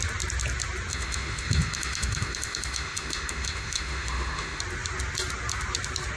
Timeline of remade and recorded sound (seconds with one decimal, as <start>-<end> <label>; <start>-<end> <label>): 0.0-0.9 recorded; 0.9-4.6 remade; 4.6-6.2 recorded